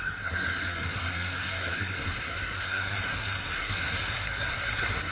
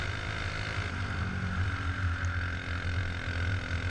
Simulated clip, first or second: first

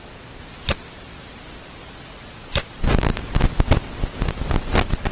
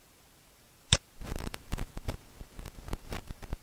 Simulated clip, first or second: second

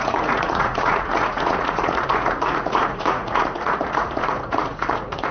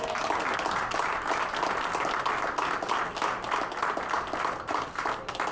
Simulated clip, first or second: first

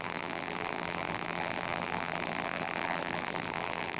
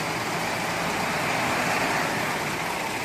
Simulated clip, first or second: first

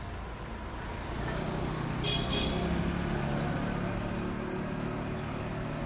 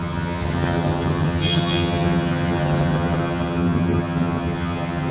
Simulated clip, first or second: second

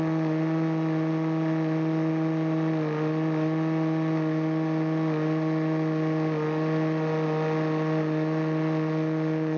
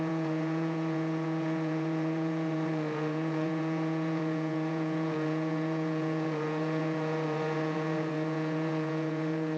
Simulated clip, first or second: second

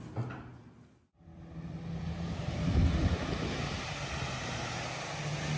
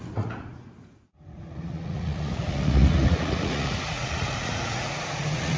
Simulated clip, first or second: second